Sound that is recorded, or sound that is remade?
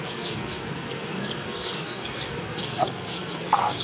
remade